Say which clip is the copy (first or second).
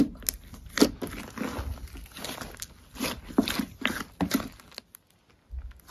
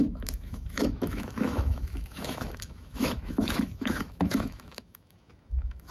second